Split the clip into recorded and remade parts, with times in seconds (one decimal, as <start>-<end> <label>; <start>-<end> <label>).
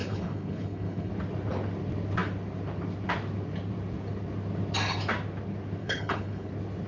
0.0-1.1 remade; 1.1-5.8 recorded; 5.8-6.5 remade; 6.5-6.9 recorded